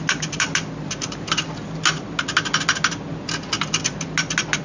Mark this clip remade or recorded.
recorded